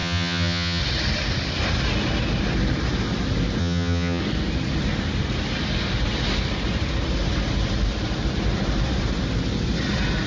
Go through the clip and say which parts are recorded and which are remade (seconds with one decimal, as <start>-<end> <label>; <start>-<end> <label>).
0.0-0.8 remade; 0.8-3.6 recorded; 3.6-4.2 remade; 4.2-10.3 recorded